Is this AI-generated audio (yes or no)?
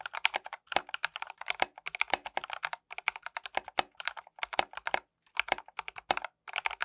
no